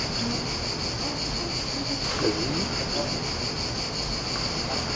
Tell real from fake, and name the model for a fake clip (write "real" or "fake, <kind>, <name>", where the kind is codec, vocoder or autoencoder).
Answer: real